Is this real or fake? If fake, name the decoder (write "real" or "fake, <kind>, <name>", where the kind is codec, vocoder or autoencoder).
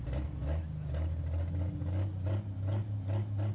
real